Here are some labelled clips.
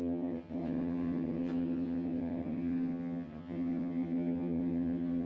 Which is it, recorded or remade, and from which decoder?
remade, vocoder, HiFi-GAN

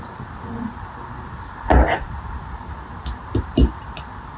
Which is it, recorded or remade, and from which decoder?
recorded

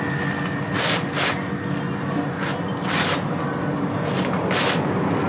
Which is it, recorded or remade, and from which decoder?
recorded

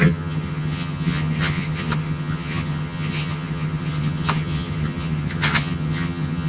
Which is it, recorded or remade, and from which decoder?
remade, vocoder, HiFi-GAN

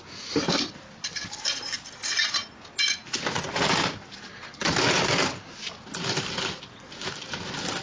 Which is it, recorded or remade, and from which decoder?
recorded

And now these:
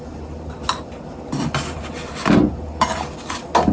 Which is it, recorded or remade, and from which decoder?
recorded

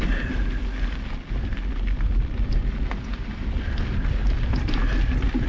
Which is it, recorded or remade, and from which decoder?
recorded